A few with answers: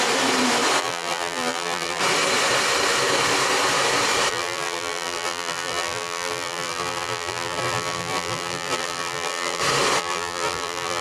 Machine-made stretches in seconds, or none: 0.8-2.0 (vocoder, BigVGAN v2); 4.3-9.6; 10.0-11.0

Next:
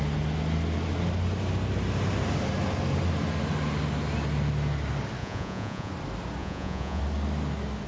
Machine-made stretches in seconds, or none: 5.2-5.9 (vocoder, Vocos); 6.4-7.0

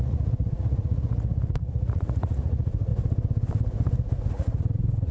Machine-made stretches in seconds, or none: 0.0-2.9 (vocoder, Vocos); 4.3-5.1